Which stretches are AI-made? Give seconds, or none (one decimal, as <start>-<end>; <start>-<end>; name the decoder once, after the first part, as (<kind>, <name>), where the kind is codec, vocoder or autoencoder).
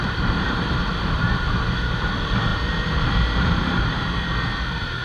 0.0-5.0 (vocoder, BigVGAN v2)